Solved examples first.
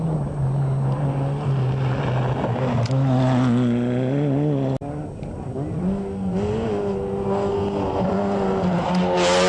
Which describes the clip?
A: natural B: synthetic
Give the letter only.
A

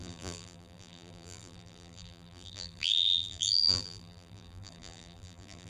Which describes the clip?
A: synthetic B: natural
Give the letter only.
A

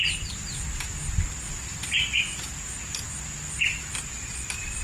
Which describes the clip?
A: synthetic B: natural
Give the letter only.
B